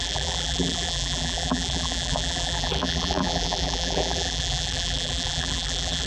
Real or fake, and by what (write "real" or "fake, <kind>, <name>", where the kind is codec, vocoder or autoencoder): fake, vocoder, BigVGAN v2